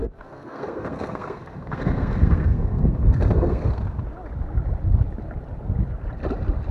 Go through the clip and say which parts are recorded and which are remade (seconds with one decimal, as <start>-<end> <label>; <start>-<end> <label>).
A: 0.0-4.0 remade; 4.0-6.7 recorded